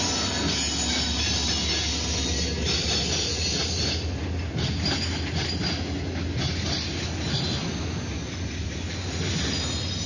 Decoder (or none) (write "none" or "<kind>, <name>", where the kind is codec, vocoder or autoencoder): none